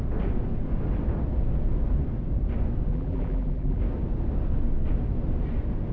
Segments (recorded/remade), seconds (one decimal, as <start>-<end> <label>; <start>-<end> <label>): 0.0-2.9 recorded; 2.9-3.8 remade; 3.8-5.9 recorded